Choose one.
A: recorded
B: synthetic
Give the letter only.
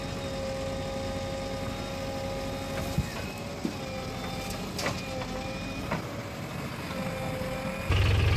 A